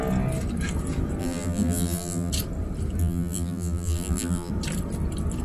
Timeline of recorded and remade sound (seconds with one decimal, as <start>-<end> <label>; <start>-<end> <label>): 0.0-1.2 recorded; 1.2-2.3 remade; 2.3-3.0 recorded; 3.0-4.5 remade; 4.5-5.4 recorded